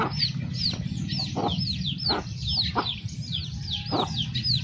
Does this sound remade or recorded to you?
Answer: recorded